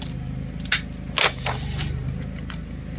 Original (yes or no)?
yes